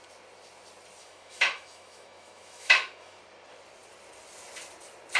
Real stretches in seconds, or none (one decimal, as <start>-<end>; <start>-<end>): 0.0-1.0; 3.2-5.2